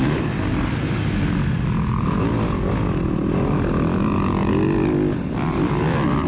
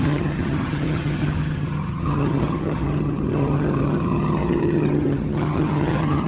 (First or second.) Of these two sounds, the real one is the first